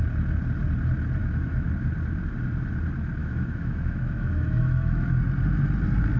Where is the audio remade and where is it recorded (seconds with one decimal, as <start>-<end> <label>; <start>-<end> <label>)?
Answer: 0.0-1.2 recorded; 1.2-1.7 remade; 1.7-3.2 recorded; 3.2-5.2 remade; 5.2-6.2 recorded